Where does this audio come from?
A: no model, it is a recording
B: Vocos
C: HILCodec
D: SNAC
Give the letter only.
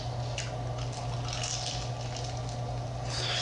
A